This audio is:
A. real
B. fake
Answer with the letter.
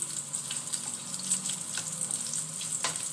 A